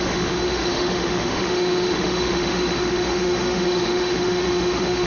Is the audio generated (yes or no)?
yes